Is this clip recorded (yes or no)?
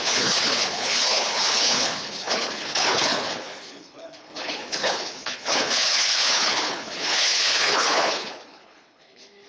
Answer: no